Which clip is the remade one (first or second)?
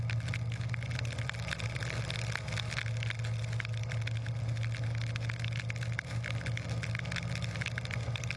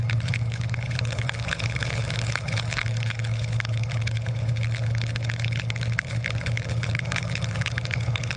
second